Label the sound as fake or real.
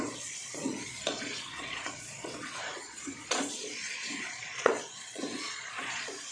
fake